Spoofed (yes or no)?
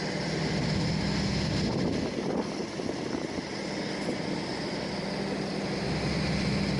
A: no